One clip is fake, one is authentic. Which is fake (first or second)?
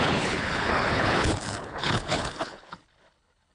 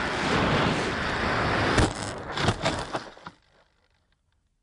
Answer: first